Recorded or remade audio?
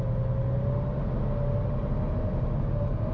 recorded